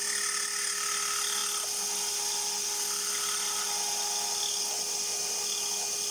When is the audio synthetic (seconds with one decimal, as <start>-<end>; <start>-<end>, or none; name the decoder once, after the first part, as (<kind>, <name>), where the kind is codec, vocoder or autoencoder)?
none